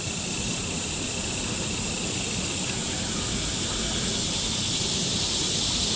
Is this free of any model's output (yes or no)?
yes